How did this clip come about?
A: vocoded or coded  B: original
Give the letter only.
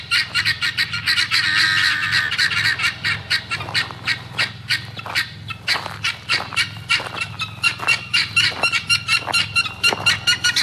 B